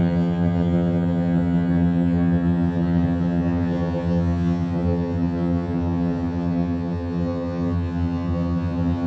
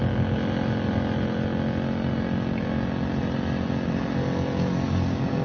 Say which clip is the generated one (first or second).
first